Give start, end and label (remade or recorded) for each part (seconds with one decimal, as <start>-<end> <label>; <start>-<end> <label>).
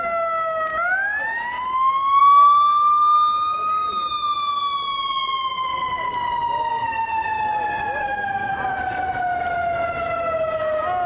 0.0-6.7 recorded; 6.7-7.4 remade; 7.4-8.0 recorded; 8.0-8.5 remade; 8.5-11.1 recorded